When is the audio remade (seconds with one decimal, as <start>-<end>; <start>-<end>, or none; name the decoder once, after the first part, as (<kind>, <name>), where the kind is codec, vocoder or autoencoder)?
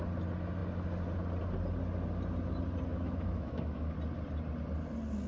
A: 2.9-3.9 (autoencoder, DAC-VAE)